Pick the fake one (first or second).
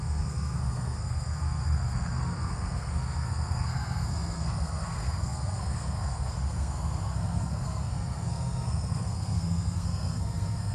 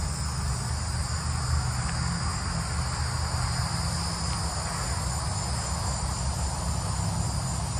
first